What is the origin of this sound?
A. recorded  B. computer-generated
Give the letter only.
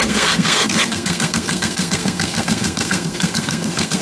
B